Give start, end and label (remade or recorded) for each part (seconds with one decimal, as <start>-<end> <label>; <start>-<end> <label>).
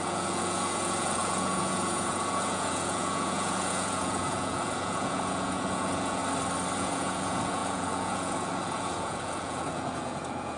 0.0-6.2 remade; 6.2-6.8 recorded; 6.8-10.6 remade